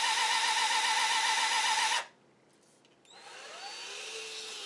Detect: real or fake real